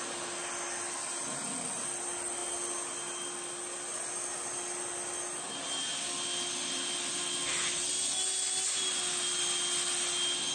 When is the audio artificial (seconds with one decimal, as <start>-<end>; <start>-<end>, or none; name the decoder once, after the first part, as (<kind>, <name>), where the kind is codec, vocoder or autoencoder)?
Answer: none